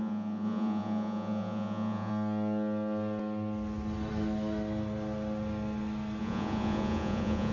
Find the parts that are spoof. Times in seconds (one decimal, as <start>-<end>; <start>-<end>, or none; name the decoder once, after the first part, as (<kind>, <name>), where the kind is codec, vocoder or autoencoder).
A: 0.0-2.1 (vocoder, Vocos); 6.2-7.5